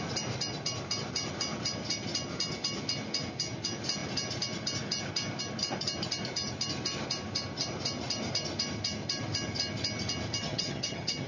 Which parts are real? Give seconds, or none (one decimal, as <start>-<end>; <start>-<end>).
0.0-10.4